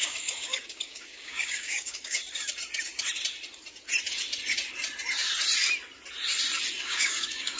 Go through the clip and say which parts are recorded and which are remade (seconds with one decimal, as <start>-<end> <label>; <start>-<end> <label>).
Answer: 0.0-2.2 remade; 2.2-6.8 recorded; 6.8-7.6 remade